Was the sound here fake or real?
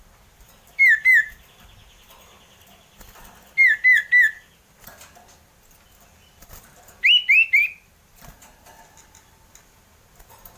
real